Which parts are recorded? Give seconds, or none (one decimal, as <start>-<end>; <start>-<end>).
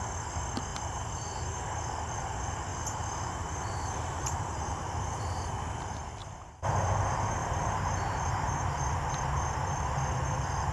0.0-0.7; 1.6-2.7; 5.5-6.2; 6.9-7.4; 9.1-10.7